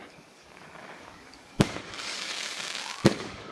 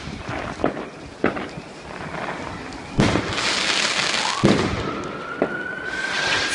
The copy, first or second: first